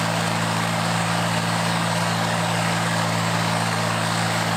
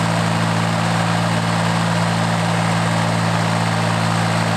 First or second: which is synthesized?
first